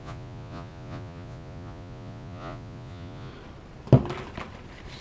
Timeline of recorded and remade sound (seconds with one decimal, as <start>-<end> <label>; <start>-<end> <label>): 0.0-3.3 remade; 3.3-5.0 recorded